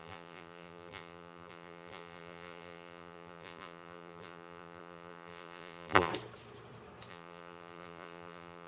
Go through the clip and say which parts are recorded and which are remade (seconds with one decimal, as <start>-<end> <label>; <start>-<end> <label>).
0.0-6.1 remade; 6.1-7.1 recorded; 7.1-8.7 remade